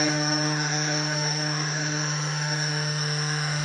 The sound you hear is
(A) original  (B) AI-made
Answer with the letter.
B